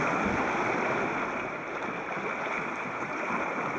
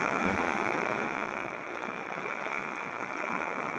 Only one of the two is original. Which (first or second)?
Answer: first